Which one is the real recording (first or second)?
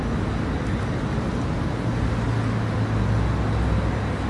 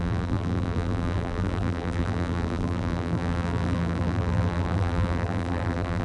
first